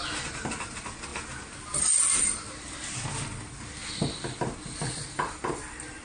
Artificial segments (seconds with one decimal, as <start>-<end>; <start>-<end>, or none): none